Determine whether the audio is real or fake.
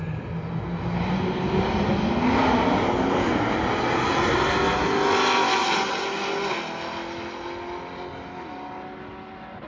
real